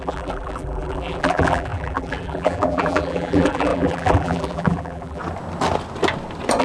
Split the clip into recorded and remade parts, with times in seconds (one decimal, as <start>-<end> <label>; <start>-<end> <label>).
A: 0.0-5.2 remade; 5.2-6.6 recorded